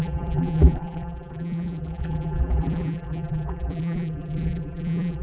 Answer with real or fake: fake